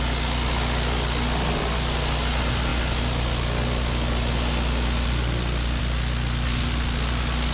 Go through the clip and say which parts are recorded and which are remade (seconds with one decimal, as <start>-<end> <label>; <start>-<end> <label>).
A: 0.0-7.5 recorded